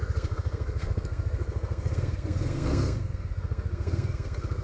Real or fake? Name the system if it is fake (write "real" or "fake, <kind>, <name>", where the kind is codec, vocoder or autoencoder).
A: fake, codec, SNAC